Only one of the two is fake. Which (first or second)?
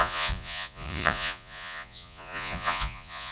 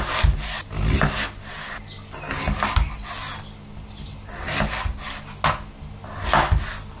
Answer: first